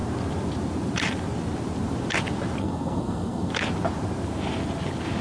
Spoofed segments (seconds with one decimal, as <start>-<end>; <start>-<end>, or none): 2.6-3.5